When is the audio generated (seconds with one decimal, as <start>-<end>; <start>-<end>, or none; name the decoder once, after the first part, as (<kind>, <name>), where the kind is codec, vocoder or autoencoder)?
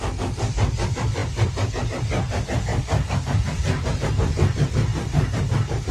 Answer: 2.7-4.1 (vocoder, BigVGAN v2); 4.9-5.9